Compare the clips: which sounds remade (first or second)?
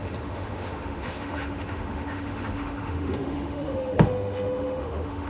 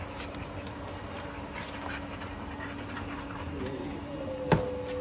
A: first